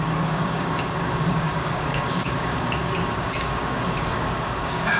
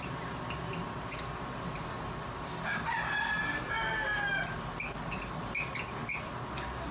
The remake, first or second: first